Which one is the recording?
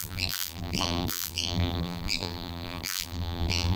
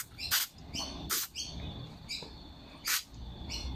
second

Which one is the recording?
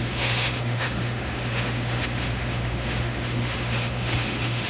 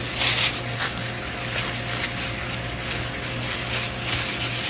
second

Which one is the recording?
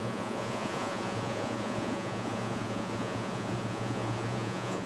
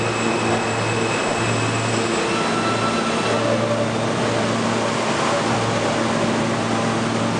second